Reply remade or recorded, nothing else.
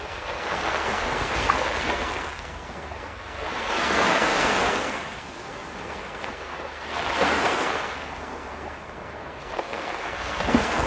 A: remade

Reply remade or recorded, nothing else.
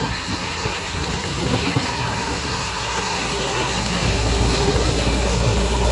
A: remade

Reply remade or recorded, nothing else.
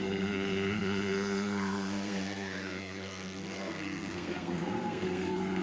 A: remade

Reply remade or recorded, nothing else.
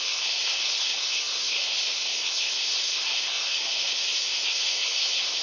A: remade